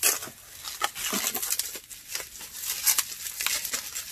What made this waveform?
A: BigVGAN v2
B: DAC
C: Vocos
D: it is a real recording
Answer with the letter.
D